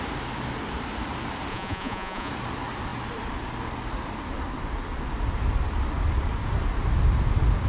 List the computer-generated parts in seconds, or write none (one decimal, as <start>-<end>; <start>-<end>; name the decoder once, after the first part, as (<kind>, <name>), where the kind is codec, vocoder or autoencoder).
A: 1.5-2.3 (vocoder, Vocos)